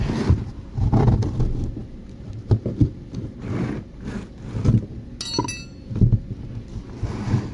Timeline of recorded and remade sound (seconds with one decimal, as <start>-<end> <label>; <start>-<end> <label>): 0.0-7.5 recorded